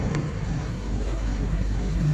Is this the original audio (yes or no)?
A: no